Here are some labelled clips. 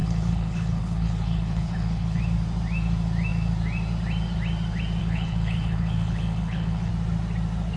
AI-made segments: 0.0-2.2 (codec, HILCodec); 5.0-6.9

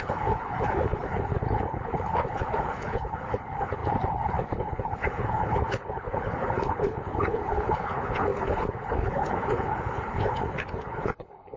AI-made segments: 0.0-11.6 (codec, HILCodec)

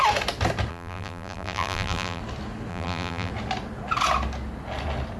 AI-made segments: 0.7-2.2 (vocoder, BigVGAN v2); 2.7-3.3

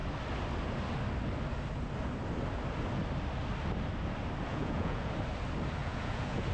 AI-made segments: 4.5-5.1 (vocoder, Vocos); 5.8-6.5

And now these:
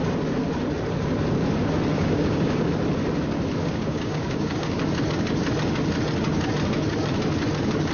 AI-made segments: 1.9-2.7 (codec, DAC); 3.6-4.8

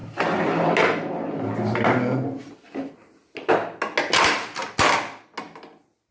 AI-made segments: none

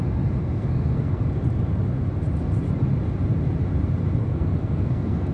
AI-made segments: 0.4-1.2 (codec, SNAC); 4.2-5.3

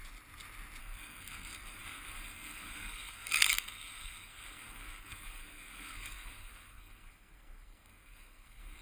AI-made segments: 0.8-8.8 (codec, SNAC)